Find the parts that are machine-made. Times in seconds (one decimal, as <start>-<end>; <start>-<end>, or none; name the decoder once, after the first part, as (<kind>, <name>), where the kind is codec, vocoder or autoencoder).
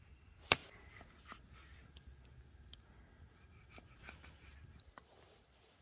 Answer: none